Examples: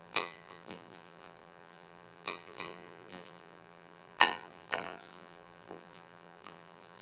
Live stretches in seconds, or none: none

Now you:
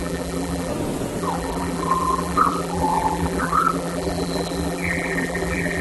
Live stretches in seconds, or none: 0.7-1.2

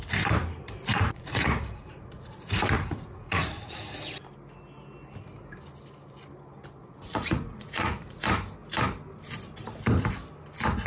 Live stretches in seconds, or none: 0.0-0.9; 3.8-6.8; 8.2-10.9

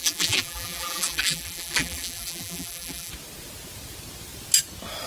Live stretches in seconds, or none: 3.1-5.1

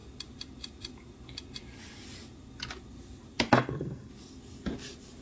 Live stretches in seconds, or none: 0.0-3.5; 4.1-5.2

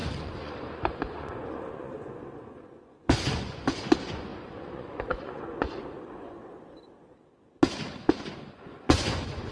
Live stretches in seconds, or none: 6.4-8.0

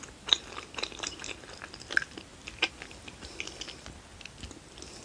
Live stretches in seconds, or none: 0.0-5.0

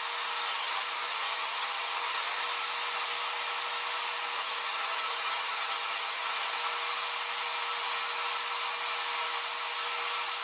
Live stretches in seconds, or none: 0.0-0.5; 2.4-4.4; 6.6-10.4